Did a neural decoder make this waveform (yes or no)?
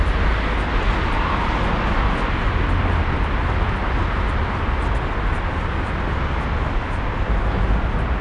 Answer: no